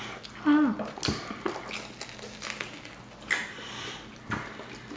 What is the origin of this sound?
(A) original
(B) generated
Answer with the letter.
A